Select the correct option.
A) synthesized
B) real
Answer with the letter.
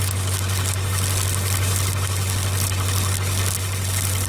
B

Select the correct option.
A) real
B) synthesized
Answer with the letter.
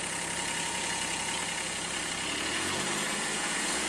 B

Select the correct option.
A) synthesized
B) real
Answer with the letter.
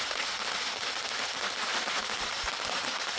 B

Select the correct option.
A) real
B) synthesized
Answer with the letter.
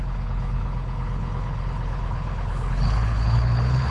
B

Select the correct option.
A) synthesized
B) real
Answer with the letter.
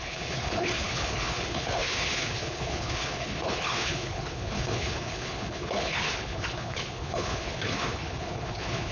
A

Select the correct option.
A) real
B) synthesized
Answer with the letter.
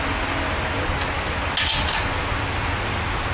A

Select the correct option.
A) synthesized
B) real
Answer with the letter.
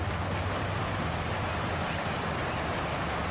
B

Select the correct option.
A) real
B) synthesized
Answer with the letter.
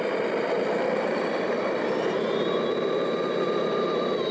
B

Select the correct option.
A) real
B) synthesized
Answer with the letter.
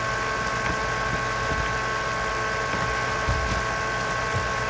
A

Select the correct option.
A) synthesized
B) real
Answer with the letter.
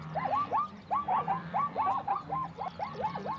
B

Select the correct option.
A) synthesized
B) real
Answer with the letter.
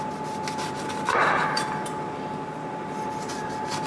B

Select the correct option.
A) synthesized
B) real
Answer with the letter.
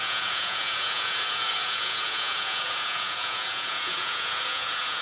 A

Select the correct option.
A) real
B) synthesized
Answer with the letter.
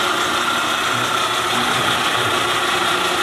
A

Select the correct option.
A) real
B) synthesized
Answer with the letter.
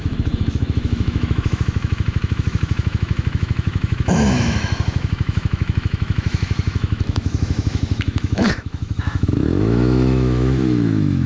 B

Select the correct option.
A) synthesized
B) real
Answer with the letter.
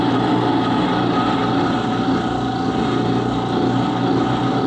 B